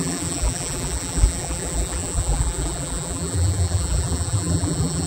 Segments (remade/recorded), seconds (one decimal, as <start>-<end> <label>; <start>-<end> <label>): 0.0-5.1 remade